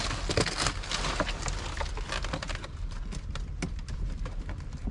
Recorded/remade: recorded